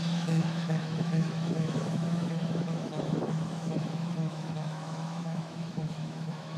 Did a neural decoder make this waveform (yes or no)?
yes